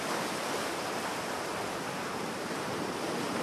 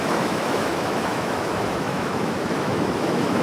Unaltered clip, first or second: first